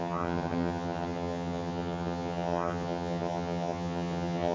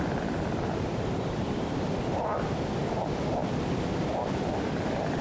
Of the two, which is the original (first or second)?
second